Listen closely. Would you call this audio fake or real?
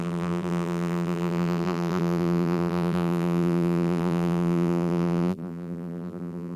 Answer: fake